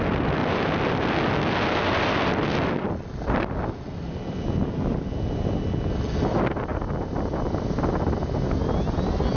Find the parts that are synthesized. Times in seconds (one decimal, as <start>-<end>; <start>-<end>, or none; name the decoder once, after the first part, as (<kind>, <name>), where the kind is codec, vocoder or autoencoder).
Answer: 6.7-8.1 (vocoder, BigVGAN v2)